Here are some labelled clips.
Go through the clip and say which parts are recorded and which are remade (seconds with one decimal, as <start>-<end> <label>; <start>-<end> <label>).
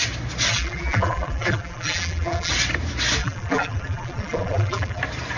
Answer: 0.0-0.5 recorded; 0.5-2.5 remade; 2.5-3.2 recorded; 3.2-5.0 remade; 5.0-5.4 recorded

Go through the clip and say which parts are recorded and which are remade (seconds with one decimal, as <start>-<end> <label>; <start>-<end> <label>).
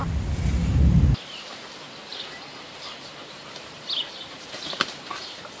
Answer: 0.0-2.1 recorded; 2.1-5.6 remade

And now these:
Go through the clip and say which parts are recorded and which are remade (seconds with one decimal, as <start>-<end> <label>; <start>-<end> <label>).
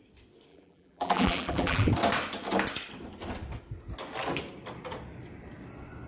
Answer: 0.0-0.5 recorded; 0.5-1.9 remade; 1.9-6.1 recorded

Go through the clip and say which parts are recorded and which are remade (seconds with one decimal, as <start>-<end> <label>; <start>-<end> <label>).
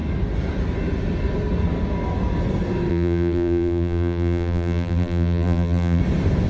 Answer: 0.0-2.9 recorded; 2.9-6.0 remade; 6.0-6.5 recorded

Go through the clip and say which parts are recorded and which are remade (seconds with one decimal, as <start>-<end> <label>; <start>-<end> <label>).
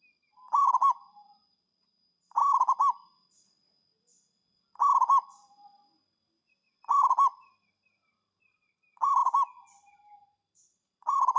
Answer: 0.0-2.4 remade; 2.4-6.5 recorded; 6.5-9.2 remade; 9.2-9.9 recorded; 9.9-11.4 remade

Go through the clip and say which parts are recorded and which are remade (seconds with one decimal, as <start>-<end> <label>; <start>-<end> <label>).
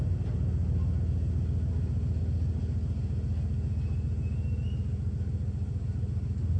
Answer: 0.0-6.6 recorded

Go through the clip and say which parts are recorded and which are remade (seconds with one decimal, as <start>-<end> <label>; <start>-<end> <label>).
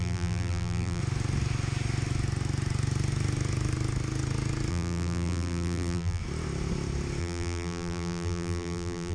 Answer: 0.0-1.0 remade; 1.0-4.7 recorded; 4.7-6.2 remade; 6.2-7.2 recorded; 7.2-9.1 remade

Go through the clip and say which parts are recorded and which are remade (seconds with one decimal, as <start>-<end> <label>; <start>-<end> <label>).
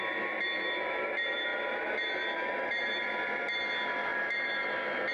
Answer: 0.0-5.1 recorded